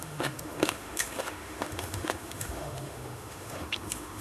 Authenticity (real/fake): fake